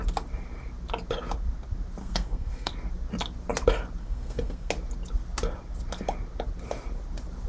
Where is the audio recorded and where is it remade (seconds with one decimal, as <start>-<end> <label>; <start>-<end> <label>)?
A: 0.0-2.0 recorded; 2.0-2.7 remade; 2.7-4.0 recorded; 4.0-4.7 remade; 4.7-7.5 recorded